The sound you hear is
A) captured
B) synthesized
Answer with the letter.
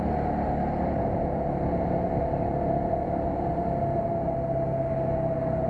A